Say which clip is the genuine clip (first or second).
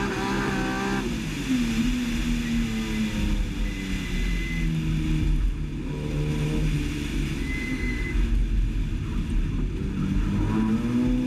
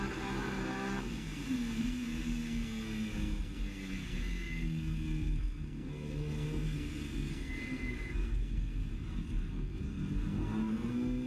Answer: first